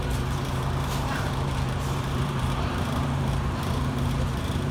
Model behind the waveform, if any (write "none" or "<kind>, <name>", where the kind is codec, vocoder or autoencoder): vocoder, BigVGAN v2